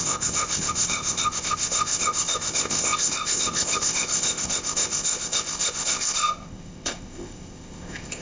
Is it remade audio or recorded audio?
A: remade